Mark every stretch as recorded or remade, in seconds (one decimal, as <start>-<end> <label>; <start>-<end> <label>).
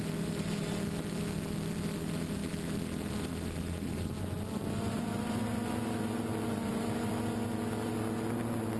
0.0-8.8 recorded